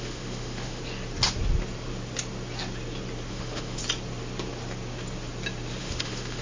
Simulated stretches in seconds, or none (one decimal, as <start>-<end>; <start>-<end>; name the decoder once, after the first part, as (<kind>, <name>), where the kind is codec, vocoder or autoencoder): 0.0-0.8 (autoencoder, DAC-VAE); 3.3-3.8; 5.8-6.4